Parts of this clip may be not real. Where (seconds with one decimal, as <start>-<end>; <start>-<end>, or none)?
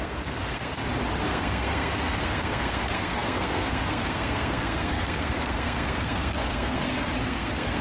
0.0-0.8; 1.3-7.8